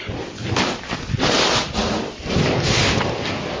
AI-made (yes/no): no